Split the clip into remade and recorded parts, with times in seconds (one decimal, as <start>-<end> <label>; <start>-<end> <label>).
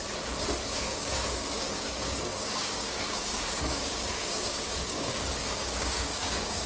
0.0-0.8 recorded; 0.8-6.7 remade